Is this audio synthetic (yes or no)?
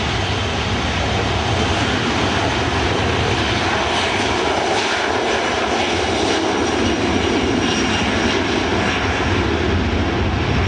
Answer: no